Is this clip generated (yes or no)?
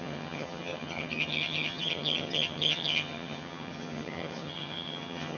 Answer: yes